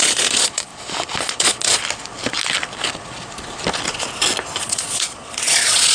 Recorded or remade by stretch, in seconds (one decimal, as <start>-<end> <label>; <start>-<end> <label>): 0.0-0.7 remade; 0.7-1.2 recorded; 1.2-1.8 remade; 1.8-4.6 recorded; 4.6-5.9 remade